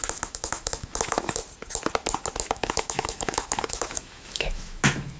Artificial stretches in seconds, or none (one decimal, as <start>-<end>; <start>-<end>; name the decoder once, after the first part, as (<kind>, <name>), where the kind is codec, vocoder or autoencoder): 0.0-1.4 (autoencoder, DAC-VAE); 2.4-5.2